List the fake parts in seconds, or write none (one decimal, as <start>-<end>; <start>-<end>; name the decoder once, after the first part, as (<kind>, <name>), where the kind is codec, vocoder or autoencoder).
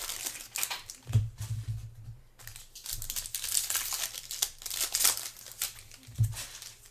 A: none